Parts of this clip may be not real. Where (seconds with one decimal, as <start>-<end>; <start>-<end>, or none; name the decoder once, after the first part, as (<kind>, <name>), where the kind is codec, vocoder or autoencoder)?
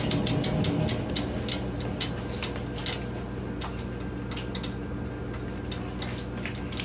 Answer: none